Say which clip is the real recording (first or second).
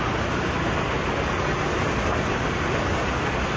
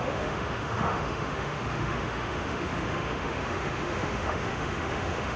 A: first